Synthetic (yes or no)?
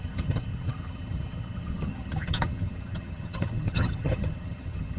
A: yes